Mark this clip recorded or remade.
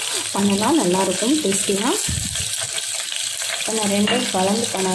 recorded